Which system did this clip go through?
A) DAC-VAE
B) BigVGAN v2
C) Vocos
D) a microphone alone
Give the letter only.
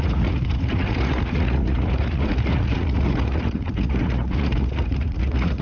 C